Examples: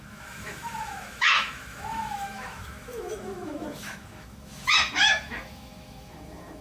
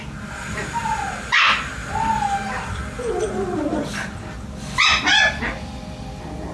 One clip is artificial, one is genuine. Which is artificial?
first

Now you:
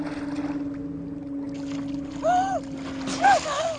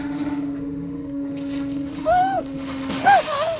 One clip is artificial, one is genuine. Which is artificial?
second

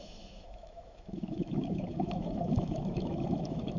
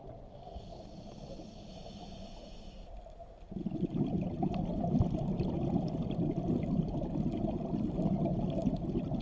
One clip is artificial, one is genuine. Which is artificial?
first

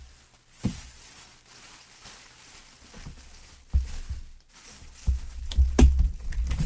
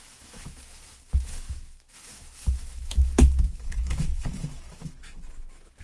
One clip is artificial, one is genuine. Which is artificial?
second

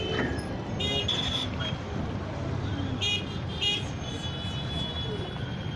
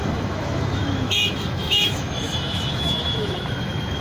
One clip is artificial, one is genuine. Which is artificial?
second